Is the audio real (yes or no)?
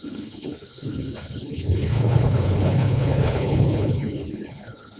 no